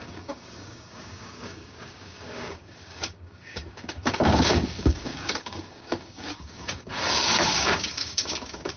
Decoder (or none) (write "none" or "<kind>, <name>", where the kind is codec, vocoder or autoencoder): codec, DAC